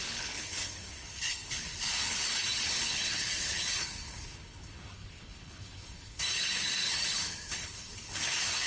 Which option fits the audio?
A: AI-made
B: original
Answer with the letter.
A